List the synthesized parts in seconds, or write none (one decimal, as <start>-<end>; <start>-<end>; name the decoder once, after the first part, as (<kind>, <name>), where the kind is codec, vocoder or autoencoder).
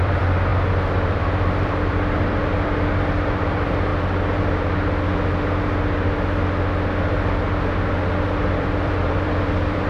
0.0-3.9 (vocoder, BigVGAN v2); 8.5-9.9